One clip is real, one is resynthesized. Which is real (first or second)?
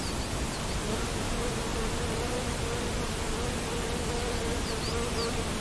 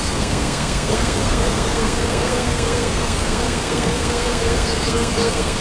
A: first